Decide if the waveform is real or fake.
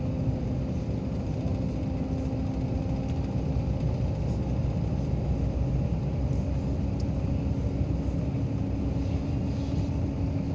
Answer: real